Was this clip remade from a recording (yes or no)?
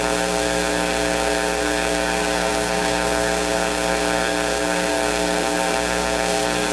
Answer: yes